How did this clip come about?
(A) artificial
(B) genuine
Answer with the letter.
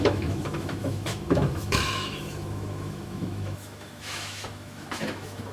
A